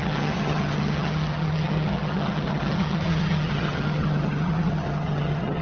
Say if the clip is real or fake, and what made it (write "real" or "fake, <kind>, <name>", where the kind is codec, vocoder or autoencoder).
fake, vocoder, HiFi-GAN